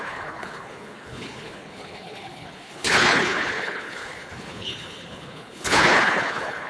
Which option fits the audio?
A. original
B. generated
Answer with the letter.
B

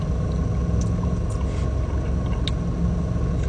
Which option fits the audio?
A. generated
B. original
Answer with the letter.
B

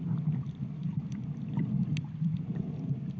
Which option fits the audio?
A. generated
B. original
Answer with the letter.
B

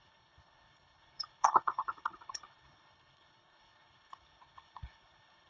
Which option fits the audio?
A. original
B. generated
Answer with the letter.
B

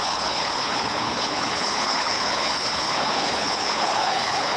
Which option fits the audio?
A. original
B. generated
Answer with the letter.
B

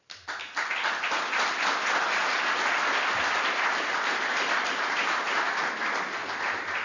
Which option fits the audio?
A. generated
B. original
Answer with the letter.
B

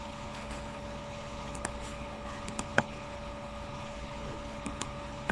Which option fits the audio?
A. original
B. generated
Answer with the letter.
B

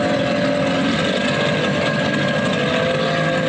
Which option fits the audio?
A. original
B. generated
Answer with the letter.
A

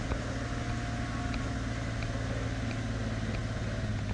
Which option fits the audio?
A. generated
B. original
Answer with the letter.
B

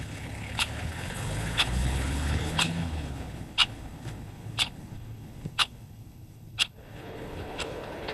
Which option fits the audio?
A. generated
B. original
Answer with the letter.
A